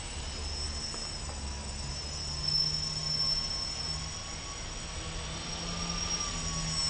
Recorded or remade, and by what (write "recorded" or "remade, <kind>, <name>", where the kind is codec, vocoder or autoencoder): recorded